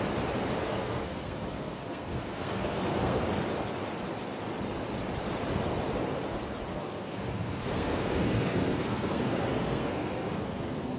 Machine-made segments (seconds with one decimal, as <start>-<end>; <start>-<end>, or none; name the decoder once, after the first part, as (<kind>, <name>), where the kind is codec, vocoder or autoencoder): 0.6-3.2 (codec, SNAC); 6.7-11.0